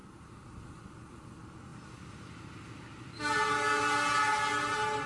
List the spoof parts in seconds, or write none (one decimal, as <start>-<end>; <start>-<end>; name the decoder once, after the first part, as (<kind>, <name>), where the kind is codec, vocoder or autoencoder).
none